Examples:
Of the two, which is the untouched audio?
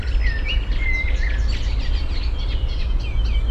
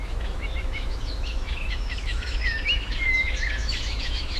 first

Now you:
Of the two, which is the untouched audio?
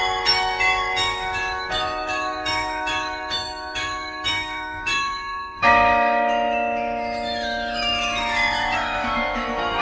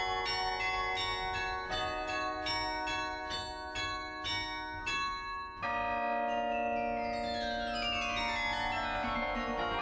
second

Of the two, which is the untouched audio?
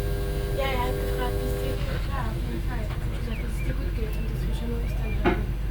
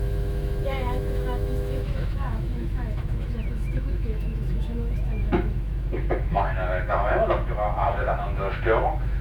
first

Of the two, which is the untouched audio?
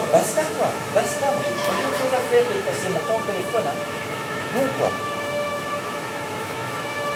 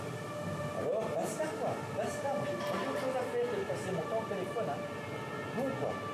second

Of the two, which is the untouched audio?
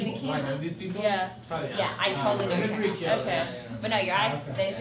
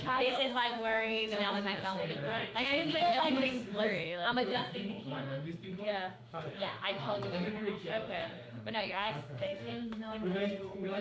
first